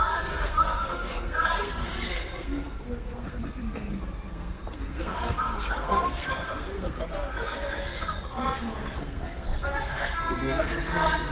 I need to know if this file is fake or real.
fake